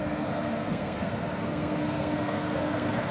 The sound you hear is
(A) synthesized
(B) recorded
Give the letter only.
A